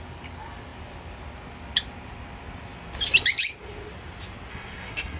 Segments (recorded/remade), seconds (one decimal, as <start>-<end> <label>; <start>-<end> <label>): 0.0-4.5 recorded; 4.5-5.2 remade